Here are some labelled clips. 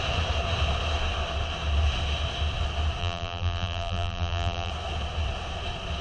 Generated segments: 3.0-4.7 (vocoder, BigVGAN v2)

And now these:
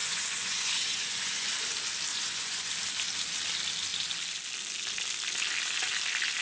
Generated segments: 0.0-1.5 (vocoder, Vocos); 2.1-2.7